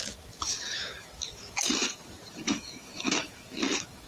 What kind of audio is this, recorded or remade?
remade